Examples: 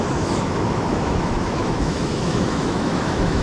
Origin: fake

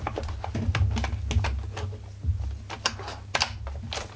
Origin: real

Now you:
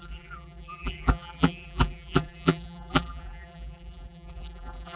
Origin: fake